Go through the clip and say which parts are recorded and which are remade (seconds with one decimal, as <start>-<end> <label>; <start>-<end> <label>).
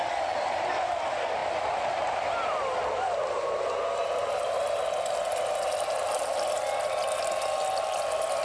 0.0-8.4 recorded